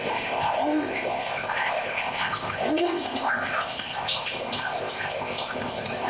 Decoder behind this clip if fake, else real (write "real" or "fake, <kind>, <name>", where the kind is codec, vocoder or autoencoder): fake, codec, ZipCodec